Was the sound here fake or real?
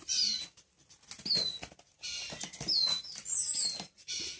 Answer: real